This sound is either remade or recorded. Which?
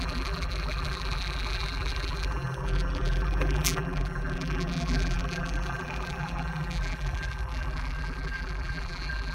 remade